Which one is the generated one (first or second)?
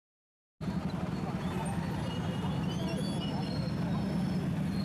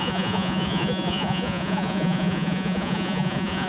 second